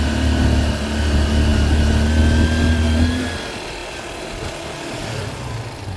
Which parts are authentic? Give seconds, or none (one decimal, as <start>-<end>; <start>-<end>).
0.0-6.0